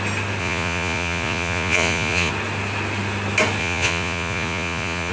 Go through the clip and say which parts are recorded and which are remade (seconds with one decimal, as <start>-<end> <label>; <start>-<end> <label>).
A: 0.0-0.4 recorded; 0.4-2.3 remade; 2.3-3.6 recorded; 3.6-5.1 remade